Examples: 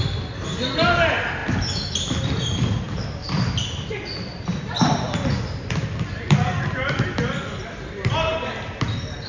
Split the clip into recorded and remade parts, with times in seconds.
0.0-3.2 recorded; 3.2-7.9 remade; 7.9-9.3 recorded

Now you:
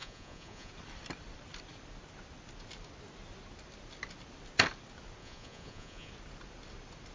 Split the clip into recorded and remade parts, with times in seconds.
0.0-0.7 remade; 0.7-5.2 recorded; 5.2-6.1 remade; 6.1-7.1 recorded

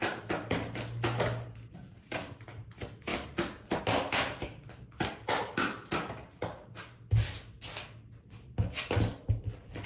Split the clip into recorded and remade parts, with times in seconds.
0.0-9.9 recorded

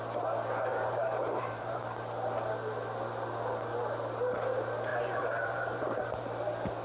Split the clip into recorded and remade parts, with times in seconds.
0.0-0.7 recorded; 0.7-1.8 remade; 1.8-4.9 recorded; 4.9-6.2 remade; 6.2-6.8 recorded

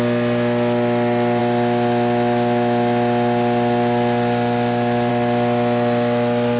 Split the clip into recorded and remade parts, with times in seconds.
0.0-6.6 recorded

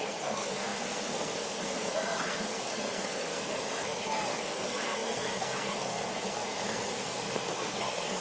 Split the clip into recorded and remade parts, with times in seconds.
0.0-8.2 remade

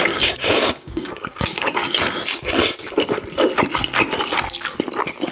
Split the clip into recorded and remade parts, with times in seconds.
0.0-1.8 remade; 1.8-5.3 recorded

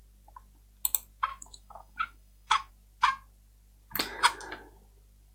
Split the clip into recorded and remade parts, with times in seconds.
0.0-1.3 recorded; 1.3-2.7 remade; 2.7-5.3 recorded